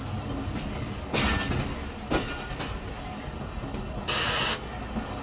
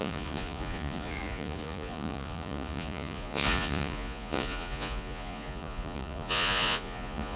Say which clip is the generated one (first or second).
second